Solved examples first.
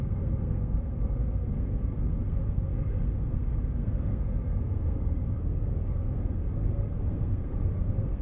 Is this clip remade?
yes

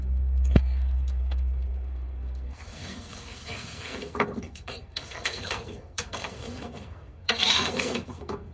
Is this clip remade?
yes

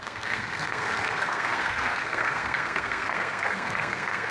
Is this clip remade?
yes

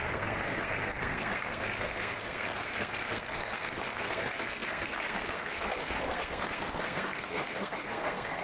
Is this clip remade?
yes